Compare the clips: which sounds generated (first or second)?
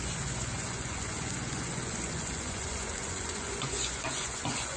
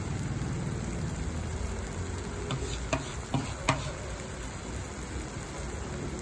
first